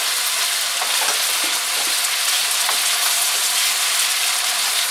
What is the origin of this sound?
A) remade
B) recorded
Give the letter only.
B